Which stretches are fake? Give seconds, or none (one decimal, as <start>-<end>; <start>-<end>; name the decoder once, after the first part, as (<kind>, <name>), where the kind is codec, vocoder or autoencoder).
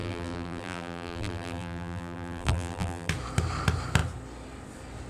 0.0-3.1 (vocoder, BigVGAN v2)